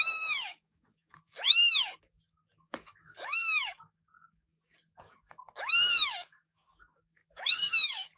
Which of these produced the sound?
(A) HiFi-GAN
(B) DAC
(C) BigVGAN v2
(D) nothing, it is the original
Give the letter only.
B